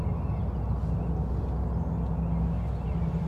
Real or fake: real